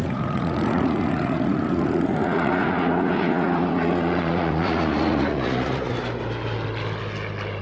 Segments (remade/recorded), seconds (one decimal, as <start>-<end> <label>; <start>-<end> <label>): 0.0-5.9 remade; 5.9-7.6 recorded